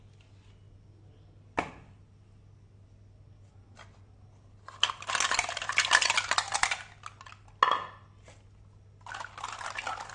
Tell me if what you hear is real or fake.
real